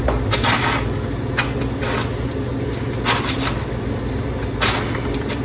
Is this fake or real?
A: real